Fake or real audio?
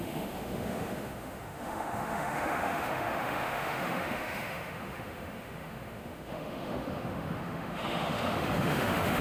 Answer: fake